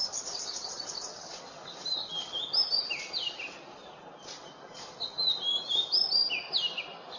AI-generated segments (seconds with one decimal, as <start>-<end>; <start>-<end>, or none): none